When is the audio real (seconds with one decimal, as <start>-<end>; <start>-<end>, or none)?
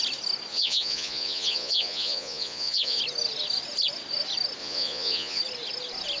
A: 0.0-0.5; 3.0-4.6; 5.4-6.2